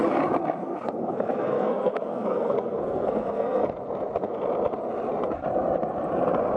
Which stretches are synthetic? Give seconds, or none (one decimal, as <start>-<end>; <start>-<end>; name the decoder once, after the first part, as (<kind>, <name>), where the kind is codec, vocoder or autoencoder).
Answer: 0.6-3.7 (codec, SNAC)